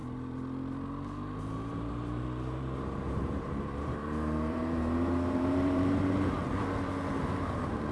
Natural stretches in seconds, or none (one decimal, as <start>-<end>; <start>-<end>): 0.0-1.4; 6.4-7.1